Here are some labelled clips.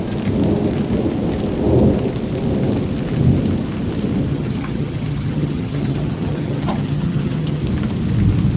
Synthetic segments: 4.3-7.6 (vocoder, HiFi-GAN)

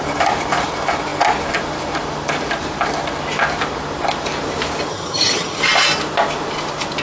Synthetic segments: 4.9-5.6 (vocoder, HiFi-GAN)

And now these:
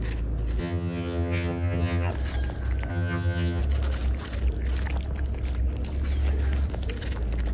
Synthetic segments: 0.6-2.1 (vocoder, HiFi-GAN); 2.9-3.6